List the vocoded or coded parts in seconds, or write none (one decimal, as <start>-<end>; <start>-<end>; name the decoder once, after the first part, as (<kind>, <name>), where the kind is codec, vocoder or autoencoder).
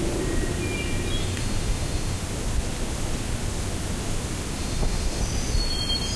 1.2-2.2 (autoencoder, DAC-VAE); 4.6-5.2